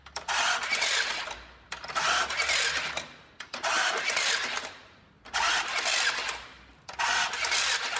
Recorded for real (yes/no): yes